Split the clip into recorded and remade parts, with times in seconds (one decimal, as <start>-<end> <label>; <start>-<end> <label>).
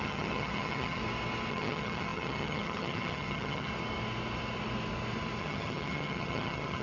0.0-1.0 remade; 1.0-1.5 recorded; 1.5-3.7 remade; 3.7-5.4 recorded; 5.4-6.8 remade